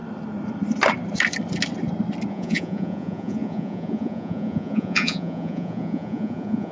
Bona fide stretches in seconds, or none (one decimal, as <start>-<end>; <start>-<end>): 0.0-2.3